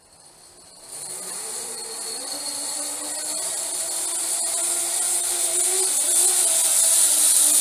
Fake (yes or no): no